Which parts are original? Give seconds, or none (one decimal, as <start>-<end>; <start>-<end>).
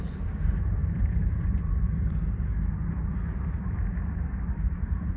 2.5-4.3